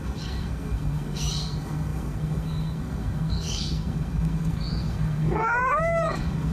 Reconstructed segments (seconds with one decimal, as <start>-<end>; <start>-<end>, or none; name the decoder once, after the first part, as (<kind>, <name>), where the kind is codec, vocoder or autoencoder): 0.0-6.5 (codec, SNAC)